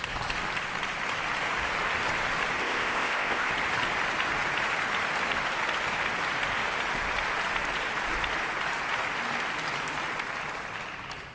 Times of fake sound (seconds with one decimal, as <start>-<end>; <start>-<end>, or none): 2.6-3.5